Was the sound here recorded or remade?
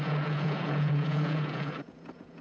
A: remade